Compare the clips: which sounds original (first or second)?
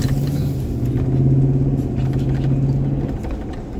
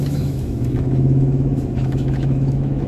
first